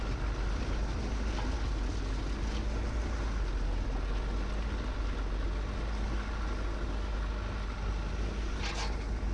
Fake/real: real